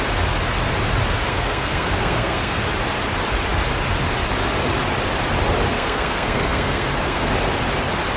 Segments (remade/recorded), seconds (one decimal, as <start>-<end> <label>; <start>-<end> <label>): 0.0-1.3 recorded; 1.3-2.6 remade; 2.6-5.7 recorded; 5.7-7.3 remade; 7.3-8.2 recorded